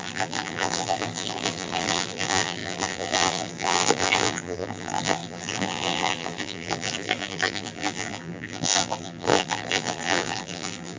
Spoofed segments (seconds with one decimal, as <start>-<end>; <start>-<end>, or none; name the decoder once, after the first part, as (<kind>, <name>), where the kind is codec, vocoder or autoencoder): 0.0-11.0 (vocoder, BigVGAN v2)